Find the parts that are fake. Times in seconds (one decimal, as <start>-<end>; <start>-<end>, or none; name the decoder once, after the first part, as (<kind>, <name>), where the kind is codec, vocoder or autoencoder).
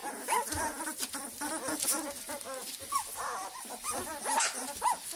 none